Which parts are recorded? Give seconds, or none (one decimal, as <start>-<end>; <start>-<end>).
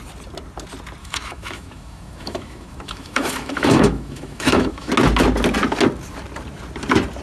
0.0-1.0; 4.9-7.2